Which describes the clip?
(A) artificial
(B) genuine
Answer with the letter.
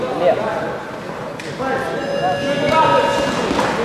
B